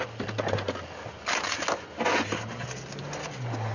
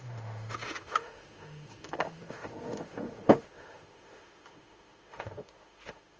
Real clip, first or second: first